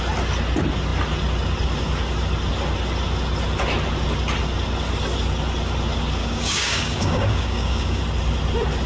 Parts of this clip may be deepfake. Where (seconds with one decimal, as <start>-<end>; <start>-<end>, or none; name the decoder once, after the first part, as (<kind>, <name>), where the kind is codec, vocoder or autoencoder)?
6.2-8.0 (codec, DAC)